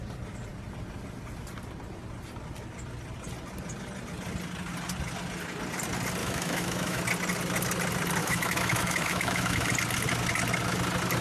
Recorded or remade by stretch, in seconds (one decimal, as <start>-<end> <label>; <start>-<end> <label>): 0.0-6.2 recorded; 6.2-7.0 remade; 7.0-8.2 recorded; 8.2-9.7 remade; 9.7-11.2 recorded